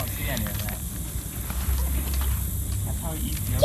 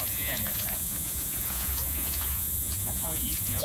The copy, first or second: second